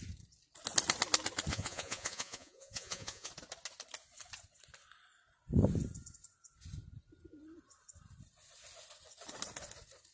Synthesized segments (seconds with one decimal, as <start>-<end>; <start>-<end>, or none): 1.5-3.3